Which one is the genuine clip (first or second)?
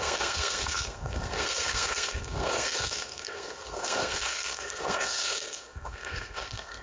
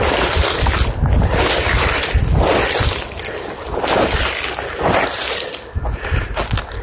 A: second